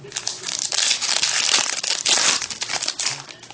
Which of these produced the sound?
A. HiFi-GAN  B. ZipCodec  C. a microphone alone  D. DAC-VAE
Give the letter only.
C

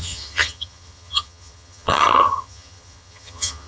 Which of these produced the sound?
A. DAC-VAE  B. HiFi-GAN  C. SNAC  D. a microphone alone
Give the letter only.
B